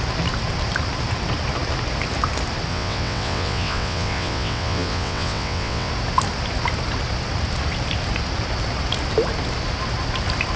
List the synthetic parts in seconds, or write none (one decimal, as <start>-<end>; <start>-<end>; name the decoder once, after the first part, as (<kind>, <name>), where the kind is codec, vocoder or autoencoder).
2.7-5.9 (vocoder, WaveNeXt)